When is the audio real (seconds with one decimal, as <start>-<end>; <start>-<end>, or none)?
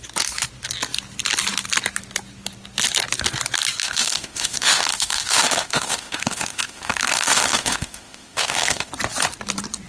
0.0-3.8; 8.9-9.9